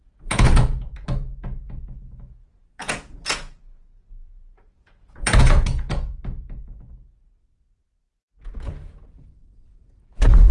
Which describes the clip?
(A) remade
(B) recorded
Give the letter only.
A